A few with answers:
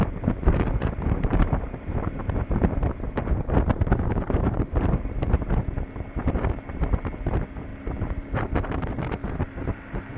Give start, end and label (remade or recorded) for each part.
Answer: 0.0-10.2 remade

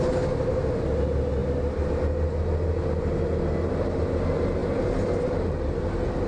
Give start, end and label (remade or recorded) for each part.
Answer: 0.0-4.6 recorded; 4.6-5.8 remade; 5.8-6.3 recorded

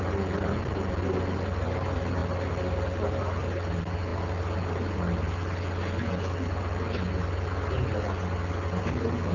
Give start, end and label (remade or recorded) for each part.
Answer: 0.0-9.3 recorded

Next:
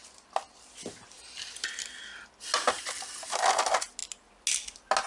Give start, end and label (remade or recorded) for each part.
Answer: 0.0-5.1 recorded

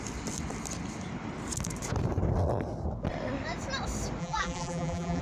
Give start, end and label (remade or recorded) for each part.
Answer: 0.0-4.2 recorded; 4.2-5.2 remade

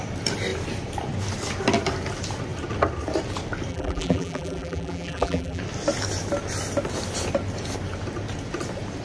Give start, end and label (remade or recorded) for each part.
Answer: 0.0-3.7 recorded; 3.7-5.6 remade; 5.6-9.0 recorded